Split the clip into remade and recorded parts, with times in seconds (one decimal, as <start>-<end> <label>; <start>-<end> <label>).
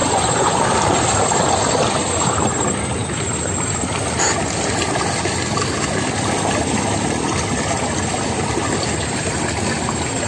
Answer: 0.0-0.6 remade; 0.6-10.3 recorded